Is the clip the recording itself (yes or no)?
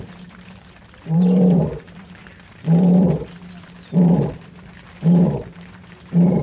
no